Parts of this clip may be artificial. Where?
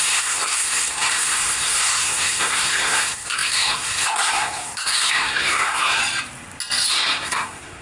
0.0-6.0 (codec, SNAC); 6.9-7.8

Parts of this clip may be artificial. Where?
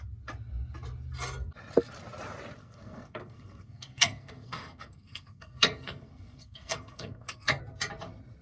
2.6-7.6 (codec, SNAC)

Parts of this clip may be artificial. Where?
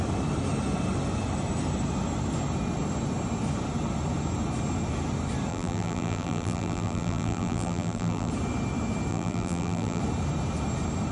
5.5-8.3 (vocoder, BigVGAN v2); 9.1-10.0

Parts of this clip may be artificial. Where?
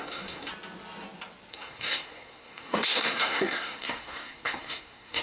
0.0-0.5 (codec, SNAC); 1.5-5.2